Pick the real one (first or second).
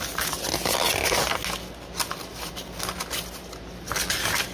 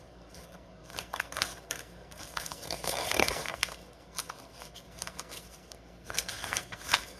first